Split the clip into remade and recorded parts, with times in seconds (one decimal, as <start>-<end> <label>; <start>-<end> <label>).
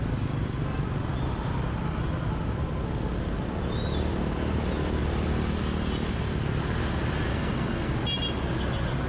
0.0-7.3 recorded; 7.3-7.9 remade; 7.9-9.1 recorded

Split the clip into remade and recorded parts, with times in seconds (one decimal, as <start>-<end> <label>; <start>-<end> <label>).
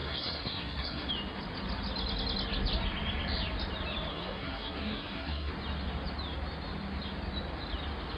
0.0-1.1 remade; 1.1-4.1 recorded; 4.1-5.5 remade; 5.5-8.2 recorded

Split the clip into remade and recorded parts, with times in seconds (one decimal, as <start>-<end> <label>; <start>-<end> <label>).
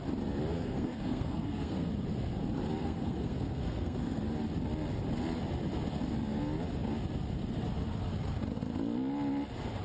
0.0-0.5 recorded; 0.5-1.9 remade; 1.9-2.8 recorded; 2.8-4.2 remade; 4.2-9.8 recorded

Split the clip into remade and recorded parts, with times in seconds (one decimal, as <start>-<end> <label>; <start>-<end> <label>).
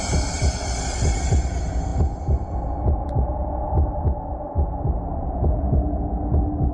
0.0-6.7 recorded